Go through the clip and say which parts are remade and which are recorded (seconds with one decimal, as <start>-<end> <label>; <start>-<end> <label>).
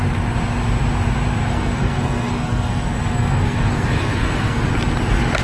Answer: 0.0-1.5 recorded; 1.5-4.7 remade; 4.7-5.4 recorded